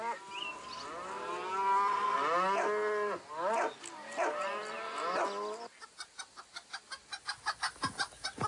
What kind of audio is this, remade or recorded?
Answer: recorded